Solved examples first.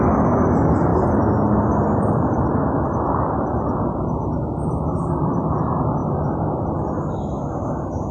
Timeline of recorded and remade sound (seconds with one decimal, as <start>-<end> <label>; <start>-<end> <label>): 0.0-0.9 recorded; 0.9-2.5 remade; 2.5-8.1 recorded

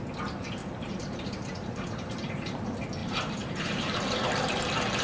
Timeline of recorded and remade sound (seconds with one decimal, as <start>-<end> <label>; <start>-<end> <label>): 0.0-0.6 recorded; 0.6-2.6 remade; 2.6-3.0 recorded; 3.0-4.6 remade; 4.6-5.0 recorded

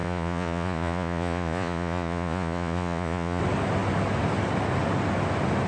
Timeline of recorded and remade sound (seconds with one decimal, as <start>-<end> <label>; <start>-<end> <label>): 0.0-3.4 remade; 3.4-5.7 recorded

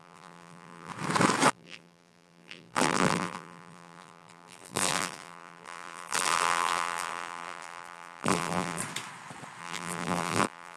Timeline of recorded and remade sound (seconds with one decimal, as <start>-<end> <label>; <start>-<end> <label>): 0.0-0.9 remade; 0.9-1.5 recorded; 1.5-8.8 remade; 8.8-9.6 recorded; 9.6-10.8 remade

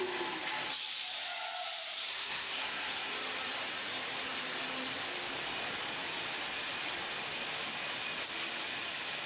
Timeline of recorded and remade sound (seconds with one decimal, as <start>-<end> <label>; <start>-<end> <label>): 0.0-2.1 recorded; 2.1-3.1 remade; 3.1-9.3 recorded

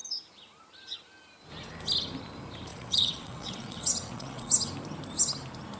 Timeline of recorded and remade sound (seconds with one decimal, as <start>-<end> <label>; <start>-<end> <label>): 0.0-2.7 recorded; 2.7-4.5 remade; 4.5-5.8 recorded

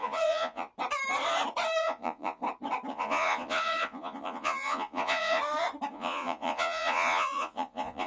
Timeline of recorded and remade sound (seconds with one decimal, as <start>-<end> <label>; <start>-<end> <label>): 0.0-0.7 remade; 0.7-1.8 recorded; 1.8-2.4 remade; 2.4-2.9 recorded; 2.9-5.4 remade; 5.4-5.9 recorded; 5.9-8.1 remade